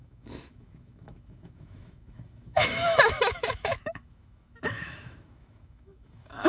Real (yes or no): no